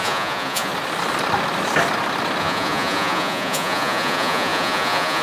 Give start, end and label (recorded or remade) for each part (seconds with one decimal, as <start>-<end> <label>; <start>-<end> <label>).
0.0-0.7 remade; 0.7-2.4 recorded; 2.4-5.2 remade

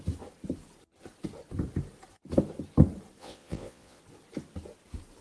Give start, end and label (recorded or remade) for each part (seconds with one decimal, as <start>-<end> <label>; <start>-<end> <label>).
0.0-3.2 recorded; 3.2-4.0 remade; 4.0-5.2 recorded